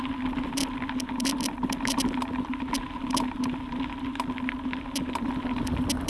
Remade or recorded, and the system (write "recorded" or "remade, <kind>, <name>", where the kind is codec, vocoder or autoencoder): remade, vocoder, BigVGAN v2